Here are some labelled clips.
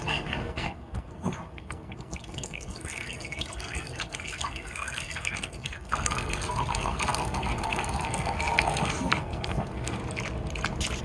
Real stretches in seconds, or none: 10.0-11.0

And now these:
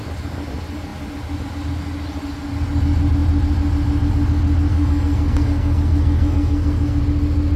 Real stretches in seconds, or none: 0.0-4.7; 7.0-7.6

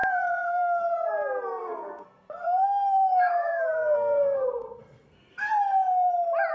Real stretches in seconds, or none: 1.1-1.6; 5.5-6.5